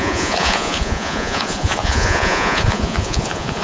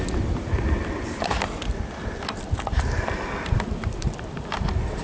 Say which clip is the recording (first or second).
second